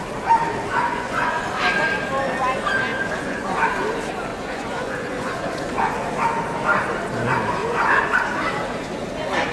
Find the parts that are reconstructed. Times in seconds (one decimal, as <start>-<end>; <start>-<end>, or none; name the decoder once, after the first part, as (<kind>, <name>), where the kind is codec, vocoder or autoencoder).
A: 0.7-1.4 (vocoder, Vocos); 2.9-3.5; 4.3-5.9; 7.6-8.1